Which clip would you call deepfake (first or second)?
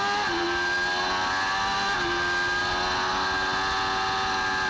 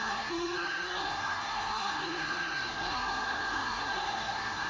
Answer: second